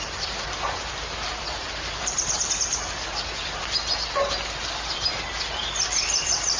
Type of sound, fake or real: fake